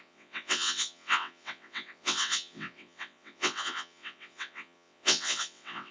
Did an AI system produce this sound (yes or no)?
yes